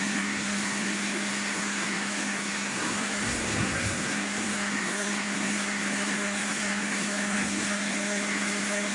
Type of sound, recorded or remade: remade